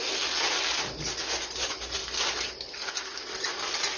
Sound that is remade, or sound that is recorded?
recorded